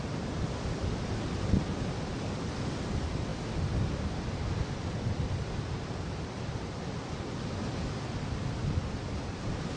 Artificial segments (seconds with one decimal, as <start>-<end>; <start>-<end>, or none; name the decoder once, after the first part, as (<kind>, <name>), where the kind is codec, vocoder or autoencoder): none